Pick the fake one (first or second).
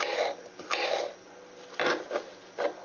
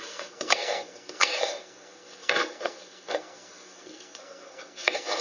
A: second